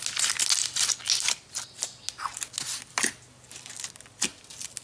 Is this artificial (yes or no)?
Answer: no